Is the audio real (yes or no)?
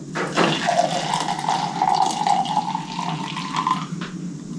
yes